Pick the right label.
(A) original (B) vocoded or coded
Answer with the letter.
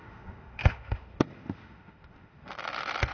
B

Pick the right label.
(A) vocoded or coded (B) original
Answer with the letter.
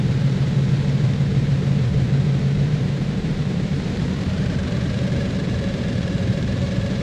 A